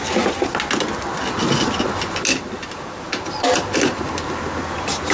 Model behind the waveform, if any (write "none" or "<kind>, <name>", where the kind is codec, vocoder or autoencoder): none